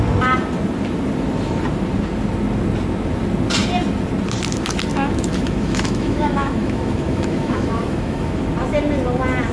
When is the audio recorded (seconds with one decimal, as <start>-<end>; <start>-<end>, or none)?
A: 0.0-4.9; 8.4-9.5